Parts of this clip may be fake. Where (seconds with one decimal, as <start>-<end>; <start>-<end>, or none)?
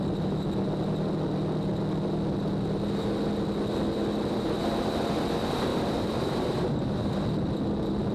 5.7-7.1